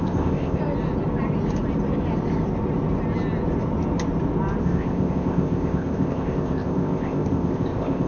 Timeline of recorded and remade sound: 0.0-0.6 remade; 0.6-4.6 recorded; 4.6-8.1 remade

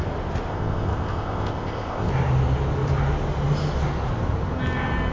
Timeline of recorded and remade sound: 0.0-0.5 recorded; 0.5-2.1 remade; 2.1-5.1 recorded

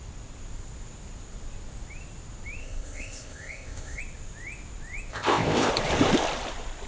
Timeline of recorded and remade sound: 0.0-2.6 recorded; 2.6-4.0 remade; 4.0-5.1 recorded; 5.1-5.7 remade; 5.7-6.9 recorded

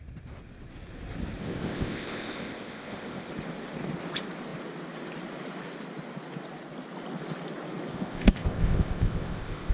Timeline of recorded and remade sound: 0.0-1.4 recorded; 1.4-3.3 remade; 3.3-7.9 recorded; 7.9-9.7 remade

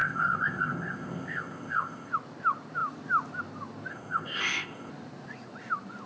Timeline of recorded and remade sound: 0.0-2.1 remade; 2.1-3.9 recorded; 3.9-4.9 remade; 4.9-6.1 recorded

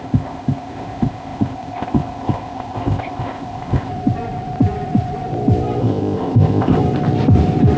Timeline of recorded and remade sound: 0.0-3.9 remade; 3.9-5.8 recorded; 5.8-6.8 remade; 6.8-7.8 recorded